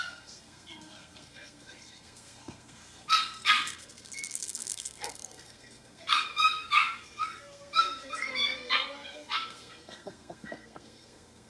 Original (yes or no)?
no